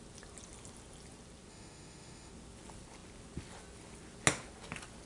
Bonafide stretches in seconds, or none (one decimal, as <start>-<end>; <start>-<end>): 0.0-1.5; 2.3-5.1